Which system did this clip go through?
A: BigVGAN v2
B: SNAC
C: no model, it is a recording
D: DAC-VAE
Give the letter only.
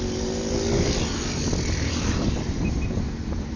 C